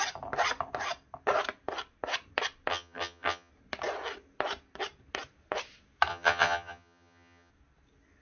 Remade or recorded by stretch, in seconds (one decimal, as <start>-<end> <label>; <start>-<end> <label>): 0.0-2.7 recorded; 2.7-3.5 remade; 3.5-6.1 recorded; 6.1-7.5 remade; 7.5-8.2 recorded